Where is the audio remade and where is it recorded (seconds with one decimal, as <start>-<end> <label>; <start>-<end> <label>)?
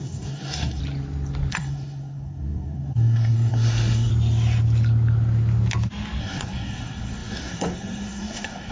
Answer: 0.0-0.8 remade; 0.8-1.5 recorded; 1.5-4.1 remade; 4.1-6.2 recorded; 6.2-8.7 remade